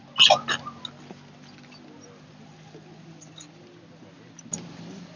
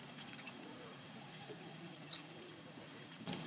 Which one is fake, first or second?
second